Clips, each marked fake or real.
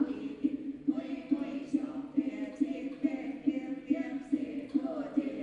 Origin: real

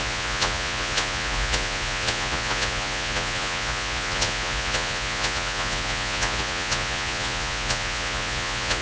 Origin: fake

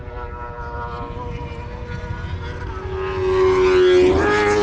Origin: real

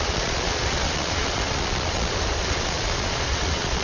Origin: fake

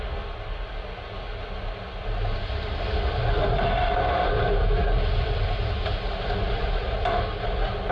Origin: real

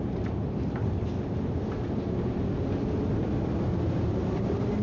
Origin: real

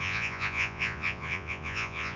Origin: fake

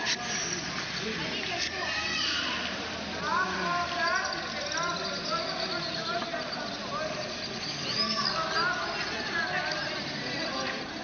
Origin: real